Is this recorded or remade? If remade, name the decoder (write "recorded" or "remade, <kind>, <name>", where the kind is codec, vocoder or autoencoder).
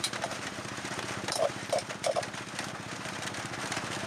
remade, vocoder, BigVGAN v2